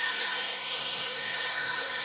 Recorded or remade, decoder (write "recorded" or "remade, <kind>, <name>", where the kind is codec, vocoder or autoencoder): remade, codec, SNAC